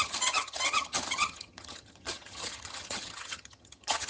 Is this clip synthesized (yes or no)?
yes